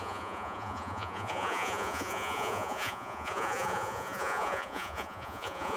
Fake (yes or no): yes